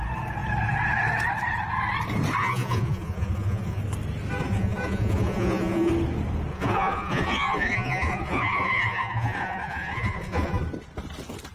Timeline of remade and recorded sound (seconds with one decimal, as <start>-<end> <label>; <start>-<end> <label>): 0.0-2.4 recorded; 2.4-3.8 remade; 3.8-4.4 recorded; 4.4-5.9 remade; 5.9-6.5 recorded; 6.5-10.6 remade; 10.6-11.5 recorded